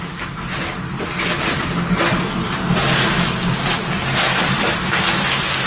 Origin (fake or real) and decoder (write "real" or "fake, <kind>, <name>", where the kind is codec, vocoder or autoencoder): real